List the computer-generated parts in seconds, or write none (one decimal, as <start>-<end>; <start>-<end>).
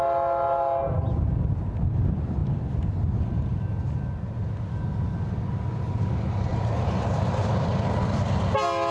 6.5-7.7